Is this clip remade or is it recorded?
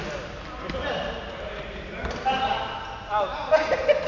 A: recorded